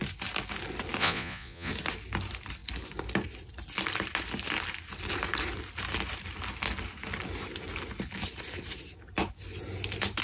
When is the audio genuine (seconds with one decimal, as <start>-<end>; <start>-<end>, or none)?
0.0-1.0; 1.7-10.2